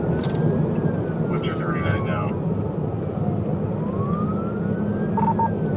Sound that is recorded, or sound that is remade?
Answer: recorded